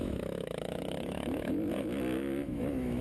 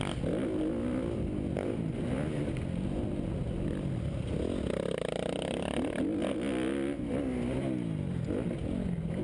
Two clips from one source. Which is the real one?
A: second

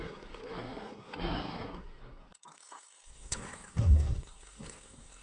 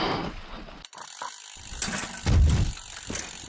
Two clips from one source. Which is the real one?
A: second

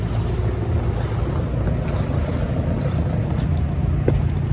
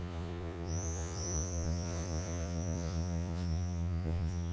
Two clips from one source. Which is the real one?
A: first